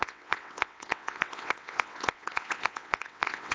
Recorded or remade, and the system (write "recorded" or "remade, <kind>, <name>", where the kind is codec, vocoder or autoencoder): remade, vocoder, WaveNeXt